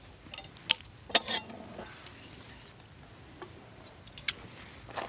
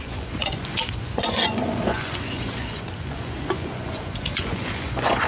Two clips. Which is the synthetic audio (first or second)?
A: second